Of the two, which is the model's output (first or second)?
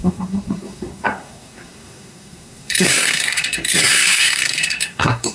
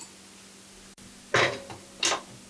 first